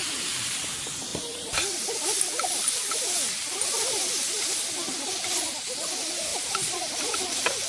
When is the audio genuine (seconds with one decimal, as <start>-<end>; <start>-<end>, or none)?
0.0-7.7

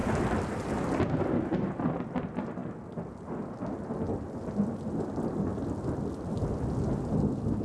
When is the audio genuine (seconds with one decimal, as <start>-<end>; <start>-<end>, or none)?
0.0-7.6

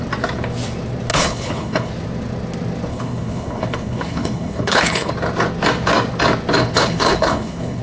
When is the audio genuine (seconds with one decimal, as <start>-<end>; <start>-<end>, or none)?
0.0-1.1; 1.9-2.9; 5.1-6.6

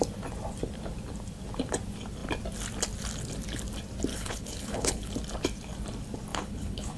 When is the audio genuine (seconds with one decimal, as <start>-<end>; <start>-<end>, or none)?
0.0-4.1; 5.1-6.3